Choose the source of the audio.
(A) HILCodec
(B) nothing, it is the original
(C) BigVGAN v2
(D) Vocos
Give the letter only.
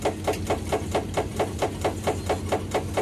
B